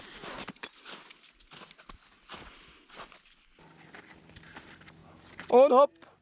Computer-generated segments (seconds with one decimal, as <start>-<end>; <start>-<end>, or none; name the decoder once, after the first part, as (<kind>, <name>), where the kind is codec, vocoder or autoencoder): none